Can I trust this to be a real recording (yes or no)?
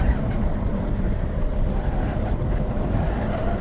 no